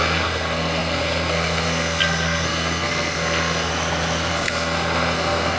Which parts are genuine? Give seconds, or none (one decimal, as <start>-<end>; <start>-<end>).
3.7-4.3